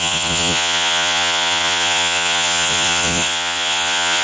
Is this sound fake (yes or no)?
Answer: yes